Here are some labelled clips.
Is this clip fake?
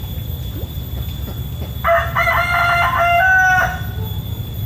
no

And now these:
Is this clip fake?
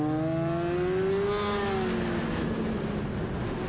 no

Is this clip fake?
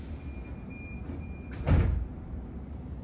no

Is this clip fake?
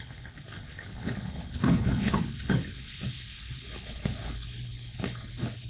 yes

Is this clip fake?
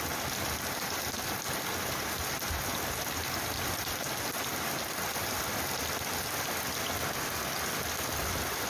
no